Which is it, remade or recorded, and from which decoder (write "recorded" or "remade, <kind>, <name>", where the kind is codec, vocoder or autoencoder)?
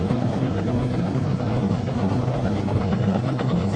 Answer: remade, codec, SNAC